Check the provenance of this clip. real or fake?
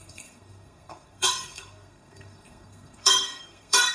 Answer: fake